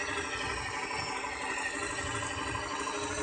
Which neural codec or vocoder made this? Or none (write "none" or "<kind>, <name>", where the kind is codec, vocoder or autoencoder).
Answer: none